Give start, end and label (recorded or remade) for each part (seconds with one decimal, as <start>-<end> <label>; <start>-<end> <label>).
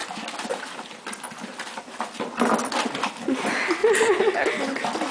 0.0-2.8 remade; 2.8-5.1 recorded